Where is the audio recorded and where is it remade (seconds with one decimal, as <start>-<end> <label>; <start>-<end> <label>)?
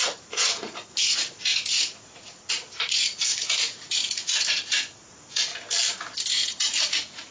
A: 0.0-5.5 remade; 5.5-6.3 recorded; 6.3-7.3 remade